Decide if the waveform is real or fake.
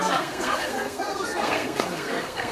fake